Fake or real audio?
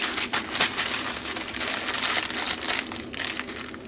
real